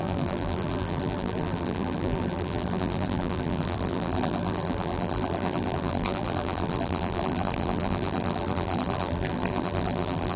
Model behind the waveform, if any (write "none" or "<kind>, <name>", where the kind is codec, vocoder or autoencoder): vocoder, BigVGAN v2